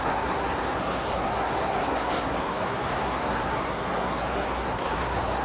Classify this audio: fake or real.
fake